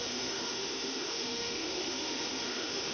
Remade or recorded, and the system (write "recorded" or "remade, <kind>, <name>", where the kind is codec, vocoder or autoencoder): remade, autoencoder, DAC-VAE